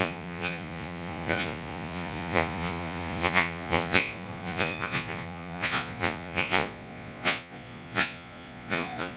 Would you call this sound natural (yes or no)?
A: no